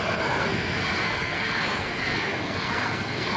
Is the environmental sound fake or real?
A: fake